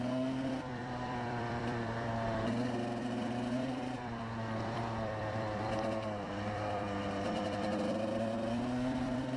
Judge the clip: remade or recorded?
remade